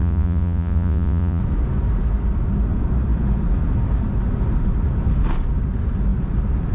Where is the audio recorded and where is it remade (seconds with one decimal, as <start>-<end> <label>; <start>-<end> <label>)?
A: 0.0-1.4 remade; 1.4-6.7 recorded